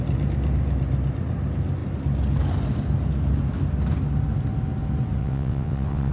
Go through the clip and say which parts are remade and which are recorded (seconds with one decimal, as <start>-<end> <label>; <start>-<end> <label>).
0.0-5.2 recorded; 5.2-6.1 remade